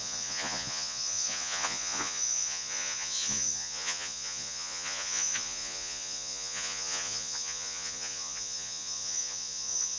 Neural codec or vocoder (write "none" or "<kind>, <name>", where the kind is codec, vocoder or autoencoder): vocoder, Vocos